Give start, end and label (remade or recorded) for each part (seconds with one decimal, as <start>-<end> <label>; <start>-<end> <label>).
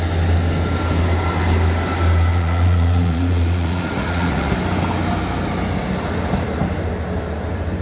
0.0-2.3 recorded; 2.3-4.5 remade; 4.5-7.8 recorded